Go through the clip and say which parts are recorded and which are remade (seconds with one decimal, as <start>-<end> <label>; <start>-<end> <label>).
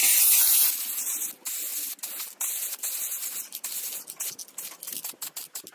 0.0-5.7 recorded